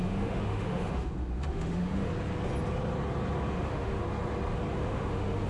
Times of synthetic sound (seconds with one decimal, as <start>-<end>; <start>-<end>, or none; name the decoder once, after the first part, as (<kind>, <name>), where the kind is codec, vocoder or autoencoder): 0.0-2.1 (autoencoder, DAC-VAE); 3.5-4.0; 4.7-5.5